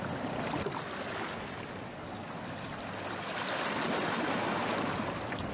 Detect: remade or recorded recorded